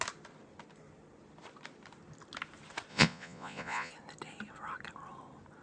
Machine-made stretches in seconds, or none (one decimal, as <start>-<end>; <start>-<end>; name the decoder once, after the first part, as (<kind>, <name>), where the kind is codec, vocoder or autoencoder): 2.9-3.9 (vocoder, Vocos)